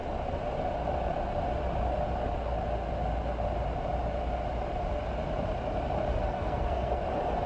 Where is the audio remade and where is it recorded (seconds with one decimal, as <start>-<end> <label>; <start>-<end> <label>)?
0.0-6.2 recorded; 6.2-7.0 remade; 7.0-7.5 recorded